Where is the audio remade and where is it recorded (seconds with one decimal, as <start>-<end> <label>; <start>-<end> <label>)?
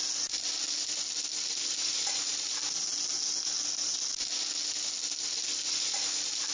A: 0.0-6.5 recorded